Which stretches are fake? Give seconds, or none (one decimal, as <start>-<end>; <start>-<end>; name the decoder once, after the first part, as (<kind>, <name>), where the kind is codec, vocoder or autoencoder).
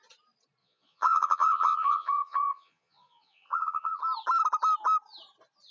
0.6-4.0 (vocoder, Vocos)